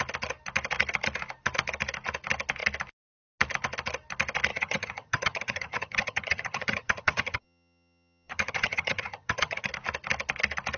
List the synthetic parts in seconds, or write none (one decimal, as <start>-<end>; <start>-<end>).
4.5-9.7